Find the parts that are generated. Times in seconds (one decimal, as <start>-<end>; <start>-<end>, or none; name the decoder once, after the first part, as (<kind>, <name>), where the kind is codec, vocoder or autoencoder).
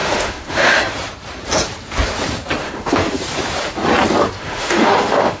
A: 0.0-0.8 (autoencoder, DAC-VAE); 2.6-3.2; 4.4-5.4